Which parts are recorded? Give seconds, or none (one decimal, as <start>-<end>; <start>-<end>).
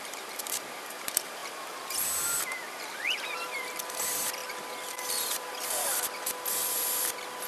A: 1.4-1.9